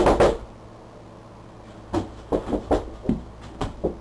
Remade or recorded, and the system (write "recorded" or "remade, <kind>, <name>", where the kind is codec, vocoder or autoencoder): recorded